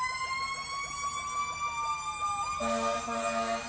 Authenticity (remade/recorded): recorded